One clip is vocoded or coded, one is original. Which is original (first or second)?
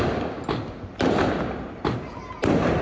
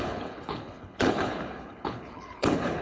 first